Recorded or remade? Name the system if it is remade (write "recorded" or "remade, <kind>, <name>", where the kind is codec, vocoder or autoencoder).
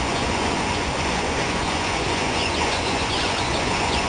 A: remade, vocoder, Vocos